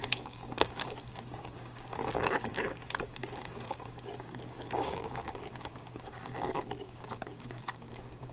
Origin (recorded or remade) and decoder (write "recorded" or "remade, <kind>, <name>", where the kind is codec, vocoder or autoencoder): remade, codec, DAC